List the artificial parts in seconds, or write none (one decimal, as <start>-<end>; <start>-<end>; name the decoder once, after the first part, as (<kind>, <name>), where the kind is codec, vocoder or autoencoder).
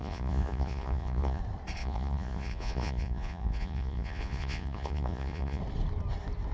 0.0-1.4 (vocoder, Vocos); 1.8-5.6